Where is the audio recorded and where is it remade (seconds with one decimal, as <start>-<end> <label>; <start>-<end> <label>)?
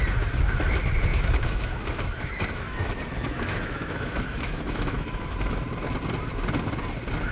0.0-1.1 recorded; 1.1-5.5 remade; 5.5-7.3 recorded